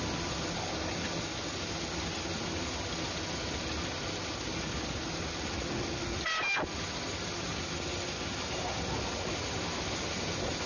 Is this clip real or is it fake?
real